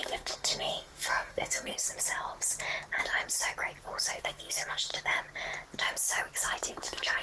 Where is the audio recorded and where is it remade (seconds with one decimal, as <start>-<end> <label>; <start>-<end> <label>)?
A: 0.0-1.7 remade; 1.7-4.1 recorded; 4.1-4.9 remade; 4.9-6.7 recorded; 6.7-7.2 remade